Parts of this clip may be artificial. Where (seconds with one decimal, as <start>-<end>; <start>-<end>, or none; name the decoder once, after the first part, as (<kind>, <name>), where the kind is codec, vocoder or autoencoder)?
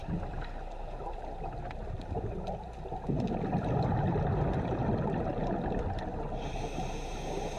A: none